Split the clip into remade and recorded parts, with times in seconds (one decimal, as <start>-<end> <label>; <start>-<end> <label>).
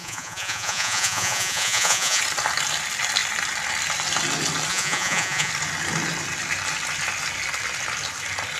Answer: 0.0-2.2 remade; 2.2-4.7 recorded; 4.7-5.5 remade; 5.5-8.6 recorded